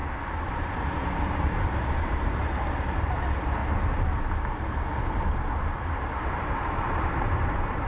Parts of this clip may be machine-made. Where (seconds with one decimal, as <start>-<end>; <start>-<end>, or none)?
0.0-3.6; 5.9-7.9

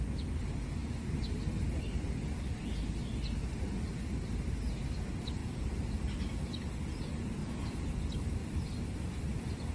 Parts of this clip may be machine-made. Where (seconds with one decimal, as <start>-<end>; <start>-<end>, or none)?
5.4-6.3; 7.4-7.9; 8.4-9.7